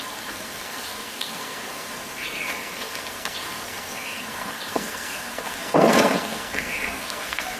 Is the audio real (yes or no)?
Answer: no